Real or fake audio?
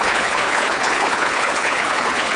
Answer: fake